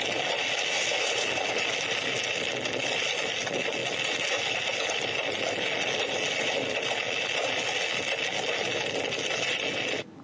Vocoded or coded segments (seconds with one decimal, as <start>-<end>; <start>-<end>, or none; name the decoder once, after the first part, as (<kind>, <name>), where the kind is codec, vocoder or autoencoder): none